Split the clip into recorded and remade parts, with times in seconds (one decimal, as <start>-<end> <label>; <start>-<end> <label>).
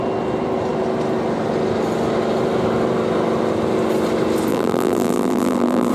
0.0-4.5 recorded; 4.5-5.9 remade